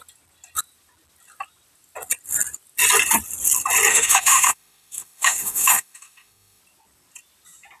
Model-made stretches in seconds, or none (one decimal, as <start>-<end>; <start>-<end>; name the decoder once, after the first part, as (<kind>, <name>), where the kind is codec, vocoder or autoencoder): 3.9-6.6 (autoencoder, DAC-VAE)